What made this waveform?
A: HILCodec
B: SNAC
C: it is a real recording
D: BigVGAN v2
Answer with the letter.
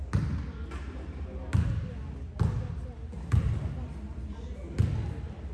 C